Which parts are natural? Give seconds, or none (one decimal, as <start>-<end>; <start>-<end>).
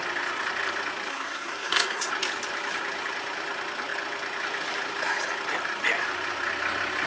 0.0-1.1; 2.1-7.1